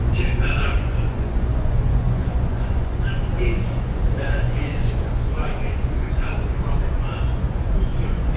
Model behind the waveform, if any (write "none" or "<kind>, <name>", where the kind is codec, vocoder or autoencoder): vocoder, Vocos